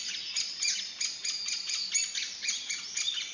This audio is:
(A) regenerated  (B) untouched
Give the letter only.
B